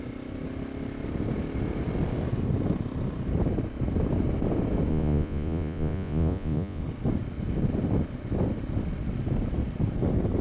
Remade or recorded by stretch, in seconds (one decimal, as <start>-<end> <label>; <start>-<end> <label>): 0.0-4.9 recorded; 4.9-6.8 remade; 6.8-10.4 recorded